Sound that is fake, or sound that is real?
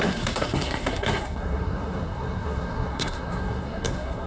fake